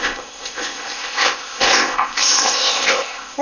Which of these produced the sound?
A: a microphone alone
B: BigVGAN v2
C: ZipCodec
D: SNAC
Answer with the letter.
C